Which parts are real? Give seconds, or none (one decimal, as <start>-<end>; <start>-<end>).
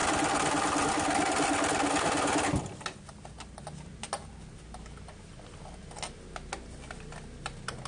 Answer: 0.0-7.9